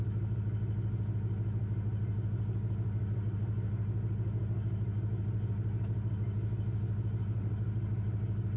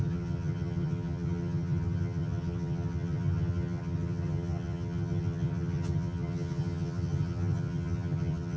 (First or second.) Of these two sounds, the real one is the first